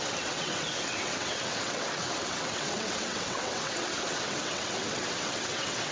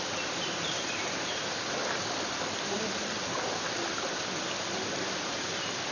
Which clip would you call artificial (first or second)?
first